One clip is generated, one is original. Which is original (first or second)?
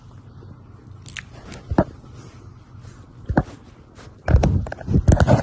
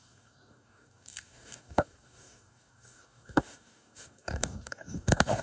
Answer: first